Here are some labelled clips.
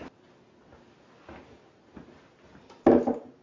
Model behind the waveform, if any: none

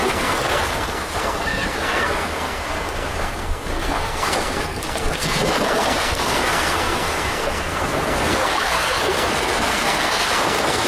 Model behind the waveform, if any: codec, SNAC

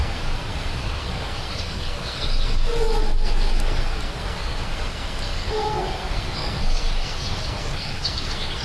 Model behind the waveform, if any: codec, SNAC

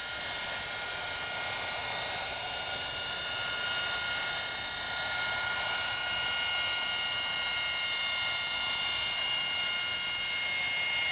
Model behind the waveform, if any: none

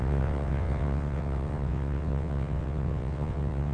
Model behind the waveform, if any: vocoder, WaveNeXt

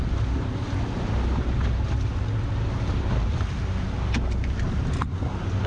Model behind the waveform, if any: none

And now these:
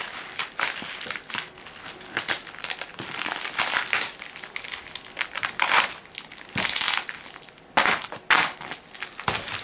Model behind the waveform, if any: none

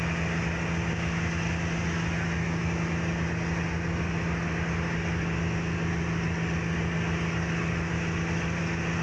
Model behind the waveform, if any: none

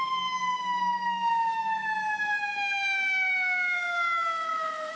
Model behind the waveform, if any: autoencoder, DAC-VAE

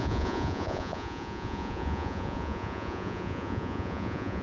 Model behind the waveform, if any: vocoder, Vocos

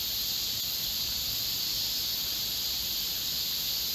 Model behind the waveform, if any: none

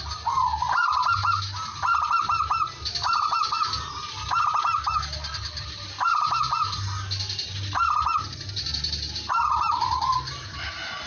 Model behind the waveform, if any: none